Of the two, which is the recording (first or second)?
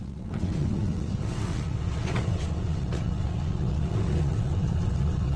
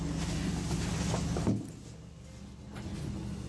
second